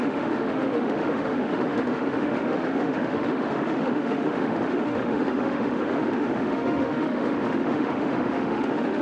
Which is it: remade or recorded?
remade